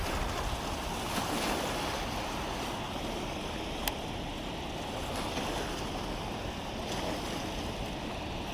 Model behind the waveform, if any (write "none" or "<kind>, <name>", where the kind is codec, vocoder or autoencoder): none